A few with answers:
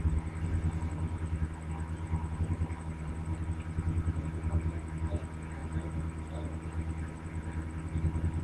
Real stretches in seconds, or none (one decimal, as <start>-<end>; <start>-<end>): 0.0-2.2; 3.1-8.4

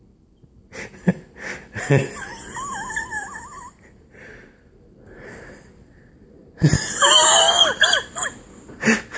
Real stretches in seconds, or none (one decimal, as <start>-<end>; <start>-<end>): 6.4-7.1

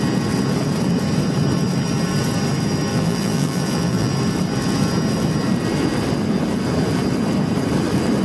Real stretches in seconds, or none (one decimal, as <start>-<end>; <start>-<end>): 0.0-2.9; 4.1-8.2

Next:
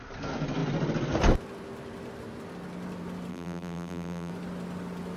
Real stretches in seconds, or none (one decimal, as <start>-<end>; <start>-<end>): 0.0-3.3; 4.3-5.2